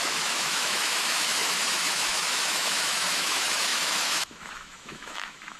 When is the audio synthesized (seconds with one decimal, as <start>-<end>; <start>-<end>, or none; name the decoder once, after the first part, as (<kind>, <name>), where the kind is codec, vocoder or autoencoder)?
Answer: 0.0-5.6 (autoencoder, DAC-VAE)